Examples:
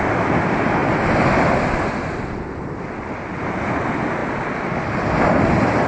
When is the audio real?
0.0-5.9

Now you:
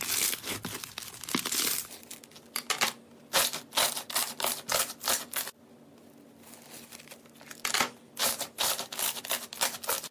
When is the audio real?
0.0-8.2; 9.2-10.1

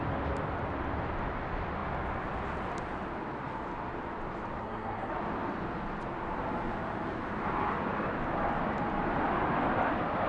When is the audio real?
0.0-4.6; 5.1-10.3

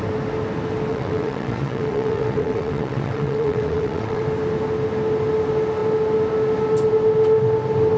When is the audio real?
0.0-0.9; 4.2-8.0

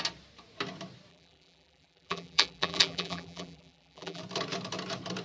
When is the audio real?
0.0-1.1; 4.2-5.2